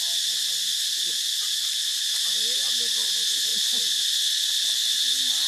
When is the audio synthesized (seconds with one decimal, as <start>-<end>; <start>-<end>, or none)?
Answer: none